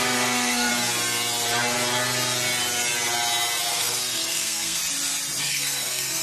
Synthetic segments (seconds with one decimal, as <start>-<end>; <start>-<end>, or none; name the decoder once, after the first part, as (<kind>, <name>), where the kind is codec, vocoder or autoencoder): 0.0-0.7 (codec, SNAC); 3.7-4.8; 5.4-6.2